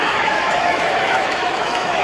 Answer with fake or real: fake